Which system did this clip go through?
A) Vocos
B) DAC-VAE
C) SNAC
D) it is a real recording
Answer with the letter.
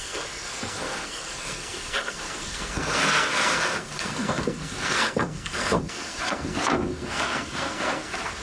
C